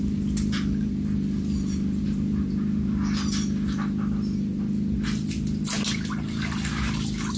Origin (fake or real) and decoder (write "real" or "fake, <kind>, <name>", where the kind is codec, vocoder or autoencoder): real